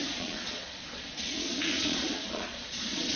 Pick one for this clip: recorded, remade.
remade